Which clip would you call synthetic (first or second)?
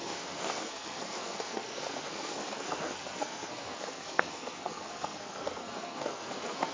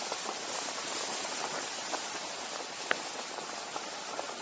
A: first